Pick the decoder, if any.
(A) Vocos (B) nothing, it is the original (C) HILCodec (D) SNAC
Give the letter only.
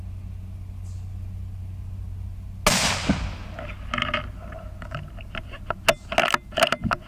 B